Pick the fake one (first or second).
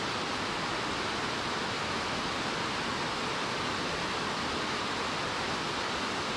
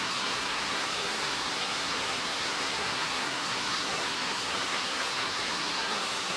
second